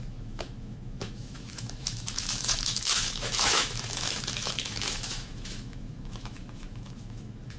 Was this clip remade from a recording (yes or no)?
yes